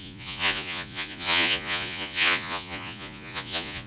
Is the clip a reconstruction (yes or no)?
yes